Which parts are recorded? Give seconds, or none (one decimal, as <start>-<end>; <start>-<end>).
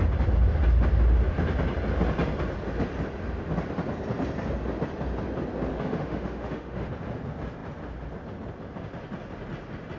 0.0-5.7; 6.9-10.0